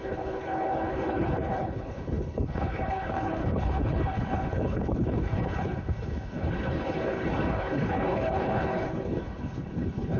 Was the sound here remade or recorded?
remade